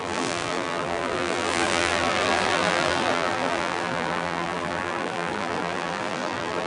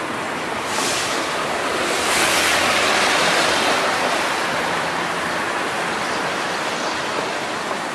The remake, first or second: first